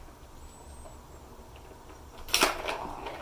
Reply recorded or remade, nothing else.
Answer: recorded